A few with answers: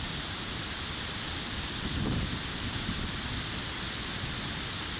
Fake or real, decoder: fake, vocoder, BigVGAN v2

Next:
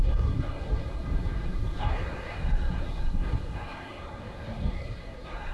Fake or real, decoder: fake, codec, SNAC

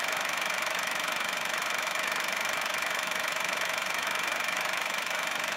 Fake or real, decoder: fake, autoencoder, DAC-VAE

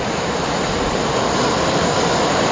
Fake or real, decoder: fake, vocoder, BigVGAN v2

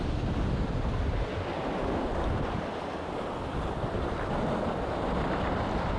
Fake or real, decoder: real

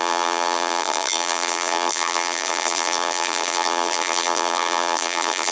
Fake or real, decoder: fake, vocoder, BigVGAN v2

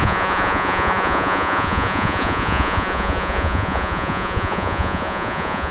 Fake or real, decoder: fake, vocoder, Vocos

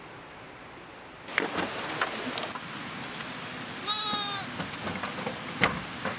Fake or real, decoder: real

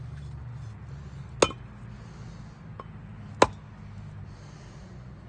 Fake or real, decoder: real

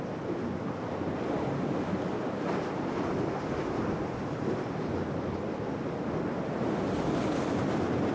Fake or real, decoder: real